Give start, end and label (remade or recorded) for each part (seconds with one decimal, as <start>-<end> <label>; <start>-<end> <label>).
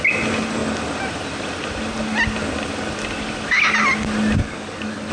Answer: 0.0-4.4 recorded; 4.4-5.1 remade